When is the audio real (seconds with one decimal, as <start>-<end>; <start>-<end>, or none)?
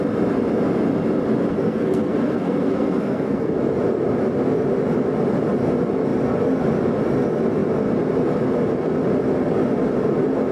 0.0-1.5; 3.6-10.5